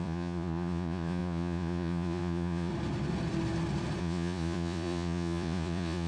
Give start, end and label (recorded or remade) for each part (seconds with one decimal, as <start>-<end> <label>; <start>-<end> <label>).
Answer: 0.0-2.7 remade; 2.7-4.0 recorded; 4.0-6.1 remade